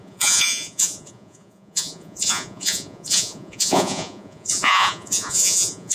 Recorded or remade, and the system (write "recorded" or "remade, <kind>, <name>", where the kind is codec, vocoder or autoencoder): remade, vocoder, Vocos